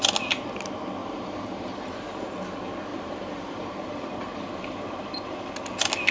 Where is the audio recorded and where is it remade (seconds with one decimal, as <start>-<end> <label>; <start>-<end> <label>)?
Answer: 0.0-1.0 recorded; 1.0-2.3 remade; 2.3-2.9 recorded; 2.9-5.5 remade; 5.5-6.1 recorded